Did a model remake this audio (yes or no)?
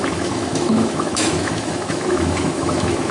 yes